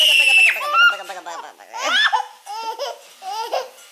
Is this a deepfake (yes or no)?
no